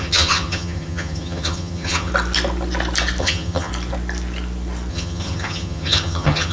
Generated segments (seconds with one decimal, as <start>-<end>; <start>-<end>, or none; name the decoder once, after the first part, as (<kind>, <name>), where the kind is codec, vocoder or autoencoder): 0.0-2.1 (vocoder, HiFi-GAN); 3.2-3.7; 4.9-6.5